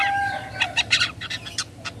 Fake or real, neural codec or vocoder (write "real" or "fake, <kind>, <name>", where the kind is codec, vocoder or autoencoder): fake, vocoder, BigVGAN v2